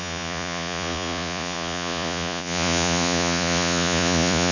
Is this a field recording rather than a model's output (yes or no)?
no